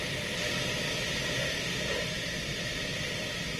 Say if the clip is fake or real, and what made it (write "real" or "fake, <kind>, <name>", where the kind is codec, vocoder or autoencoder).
real